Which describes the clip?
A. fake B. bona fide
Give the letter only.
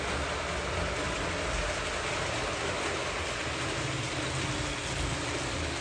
B